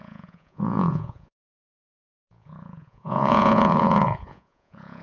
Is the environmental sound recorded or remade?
remade